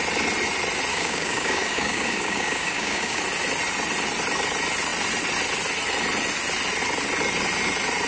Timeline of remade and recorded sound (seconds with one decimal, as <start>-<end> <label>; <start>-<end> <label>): 0.0-0.9 recorded; 0.9-3.2 remade; 3.2-8.1 recorded